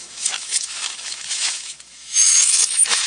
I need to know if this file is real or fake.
fake